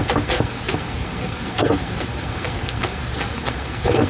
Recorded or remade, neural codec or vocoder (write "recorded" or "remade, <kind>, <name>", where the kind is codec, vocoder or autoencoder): remade, codec, SNAC